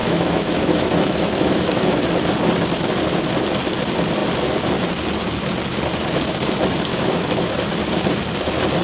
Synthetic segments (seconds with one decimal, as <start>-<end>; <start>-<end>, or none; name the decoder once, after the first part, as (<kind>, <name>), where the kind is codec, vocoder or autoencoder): 0.0-2.1 (autoencoder, DAC-VAE); 6.9-7.7